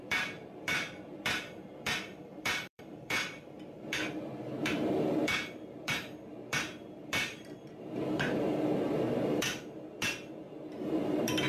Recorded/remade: remade